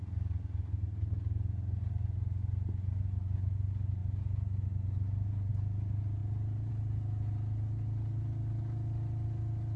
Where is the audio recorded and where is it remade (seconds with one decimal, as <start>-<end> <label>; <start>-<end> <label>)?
0.0-9.8 recorded